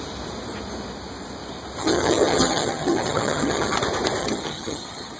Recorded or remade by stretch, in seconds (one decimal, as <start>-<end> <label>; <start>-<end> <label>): 0.0-1.8 recorded; 1.8-3.8 remade; 3.8-4.2 recorded; 4.2-5.2 remade